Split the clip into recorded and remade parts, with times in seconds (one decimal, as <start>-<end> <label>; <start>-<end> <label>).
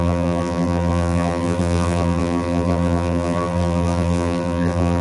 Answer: 0.0-5.0 remade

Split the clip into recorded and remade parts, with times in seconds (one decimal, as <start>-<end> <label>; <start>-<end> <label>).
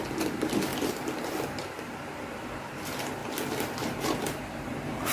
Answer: 0.0-0.7 remade; 0.7-1.2 recorded; 1.2-5.1 remade